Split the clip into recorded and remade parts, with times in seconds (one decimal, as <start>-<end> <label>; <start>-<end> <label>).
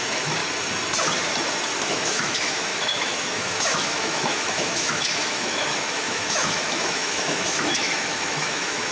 0.0-0.4 remade; 0.4-1.9 recorded; 1.9-8.9 remade